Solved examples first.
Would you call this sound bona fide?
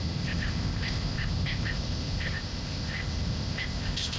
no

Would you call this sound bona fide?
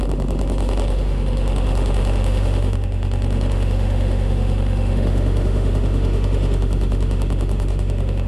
no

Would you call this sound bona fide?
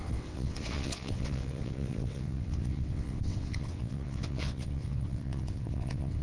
no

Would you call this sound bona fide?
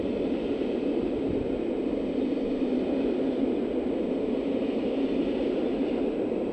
yes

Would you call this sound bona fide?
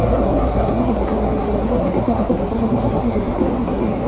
no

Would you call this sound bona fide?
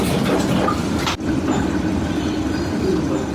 yes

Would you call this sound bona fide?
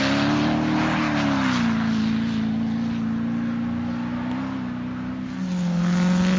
yes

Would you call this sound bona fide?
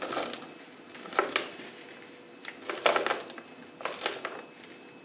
yes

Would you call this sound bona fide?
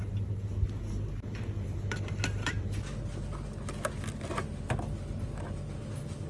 yes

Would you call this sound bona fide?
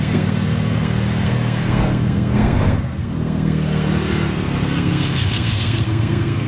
no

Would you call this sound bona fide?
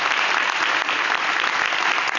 yes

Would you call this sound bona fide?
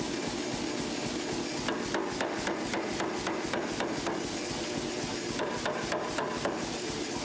yes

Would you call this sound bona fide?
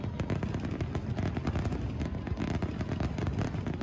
yes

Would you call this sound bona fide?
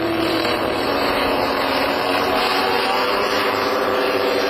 no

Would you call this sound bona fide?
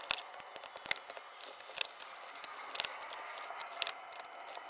yes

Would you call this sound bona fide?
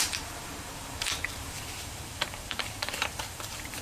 no